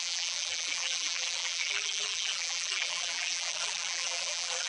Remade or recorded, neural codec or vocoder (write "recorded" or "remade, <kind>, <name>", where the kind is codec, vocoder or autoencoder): remade, vocoder, BigVGAN v2